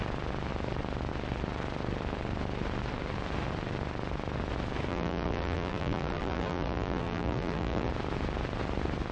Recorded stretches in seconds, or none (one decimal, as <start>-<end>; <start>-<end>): 0.0-4.9; 7.9-9.1